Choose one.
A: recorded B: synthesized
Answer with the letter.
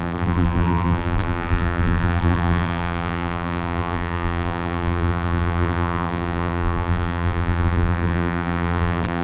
B